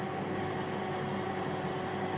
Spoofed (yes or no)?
no